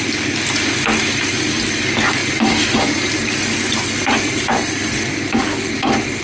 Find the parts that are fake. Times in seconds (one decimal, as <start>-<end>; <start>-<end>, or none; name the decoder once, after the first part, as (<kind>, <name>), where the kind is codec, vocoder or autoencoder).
none